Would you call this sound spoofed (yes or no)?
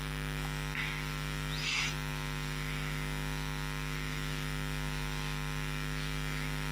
no